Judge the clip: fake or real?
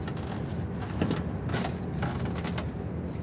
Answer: real